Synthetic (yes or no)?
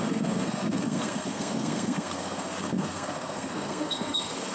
yes